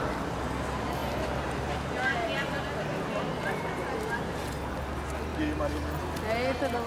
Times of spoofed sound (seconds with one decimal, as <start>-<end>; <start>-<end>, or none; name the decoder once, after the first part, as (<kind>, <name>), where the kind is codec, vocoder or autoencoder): none